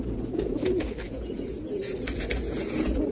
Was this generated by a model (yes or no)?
yes